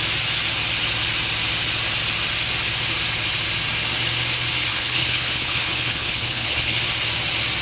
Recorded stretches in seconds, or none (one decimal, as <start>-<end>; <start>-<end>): 0.0-4.7; 6.8-7.6